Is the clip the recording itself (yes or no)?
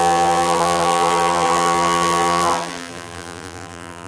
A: no